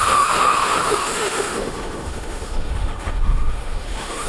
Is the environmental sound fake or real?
fake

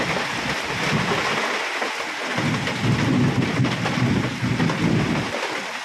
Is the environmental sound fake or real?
real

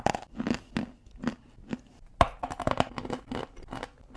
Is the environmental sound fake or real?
real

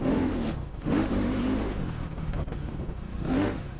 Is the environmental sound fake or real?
fake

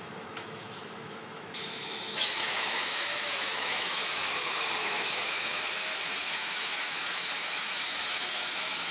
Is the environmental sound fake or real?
fake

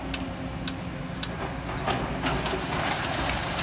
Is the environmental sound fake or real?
real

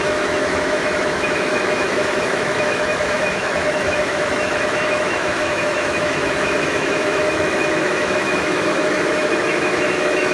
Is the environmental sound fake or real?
fake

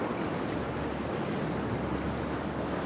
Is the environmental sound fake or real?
real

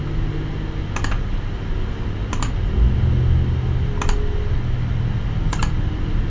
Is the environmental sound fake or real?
real